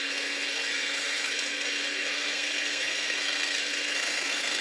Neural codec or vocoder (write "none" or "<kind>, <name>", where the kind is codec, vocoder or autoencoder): codec, SNAC